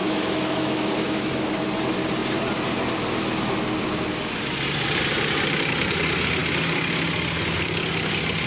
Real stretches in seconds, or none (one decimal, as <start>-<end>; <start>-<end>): 1.5-8.5